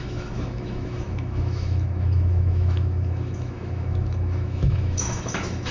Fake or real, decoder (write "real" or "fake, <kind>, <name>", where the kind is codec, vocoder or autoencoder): fake, autoencoder, DAC-VAE